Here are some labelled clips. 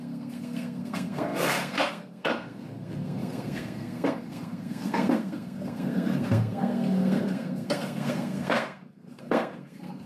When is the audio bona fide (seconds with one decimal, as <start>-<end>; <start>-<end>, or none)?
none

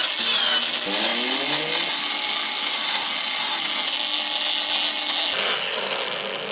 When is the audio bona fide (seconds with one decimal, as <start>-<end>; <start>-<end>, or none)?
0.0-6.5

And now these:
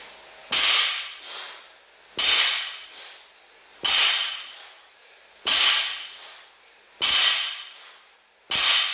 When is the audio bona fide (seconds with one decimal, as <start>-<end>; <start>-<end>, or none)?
0.0-4.2; 5.8-8.9